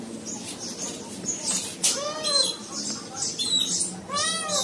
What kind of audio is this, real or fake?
real